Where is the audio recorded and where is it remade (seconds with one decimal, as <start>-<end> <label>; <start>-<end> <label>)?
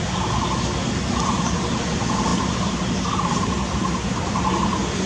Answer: 0.0-2.3 recorded; 2.3-4.1 remade; 4.1-5.1 recorded